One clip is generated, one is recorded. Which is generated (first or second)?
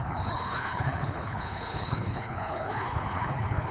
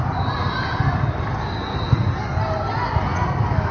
first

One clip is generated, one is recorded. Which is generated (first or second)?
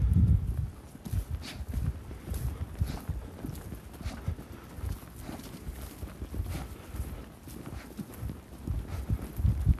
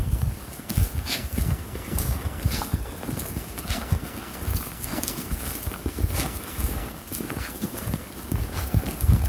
second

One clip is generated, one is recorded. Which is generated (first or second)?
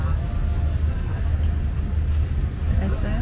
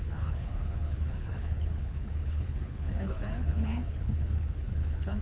second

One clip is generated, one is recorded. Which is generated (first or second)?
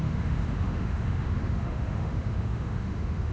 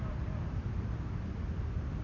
first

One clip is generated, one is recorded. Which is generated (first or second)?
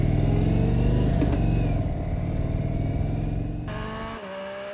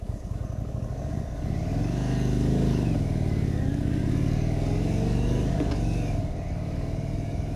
second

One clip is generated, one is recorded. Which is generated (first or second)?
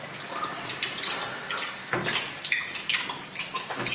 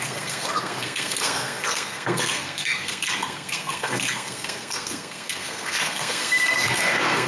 second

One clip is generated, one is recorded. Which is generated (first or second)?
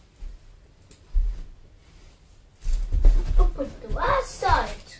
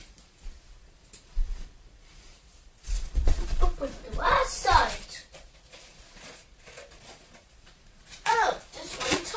second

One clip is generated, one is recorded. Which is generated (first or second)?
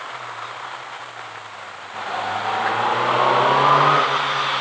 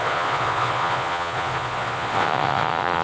second